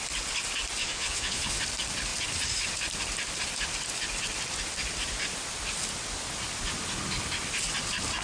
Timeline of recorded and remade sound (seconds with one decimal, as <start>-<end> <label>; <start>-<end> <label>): 0.0-0.8 recorded; 0.8-1.6 remade; 1.6-8.2 recorded